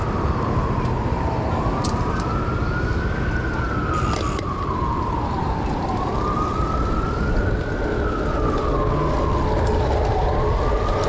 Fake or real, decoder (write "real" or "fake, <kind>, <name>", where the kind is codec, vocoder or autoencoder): real